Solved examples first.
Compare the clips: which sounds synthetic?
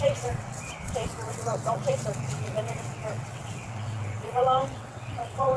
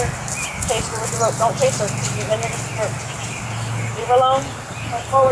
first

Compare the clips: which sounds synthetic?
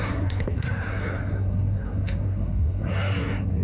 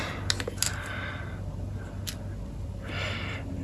first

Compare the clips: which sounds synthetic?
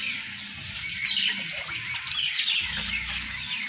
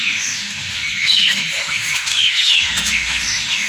second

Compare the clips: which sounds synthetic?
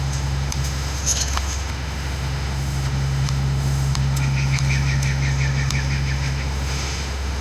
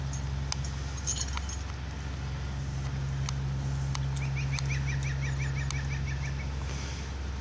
first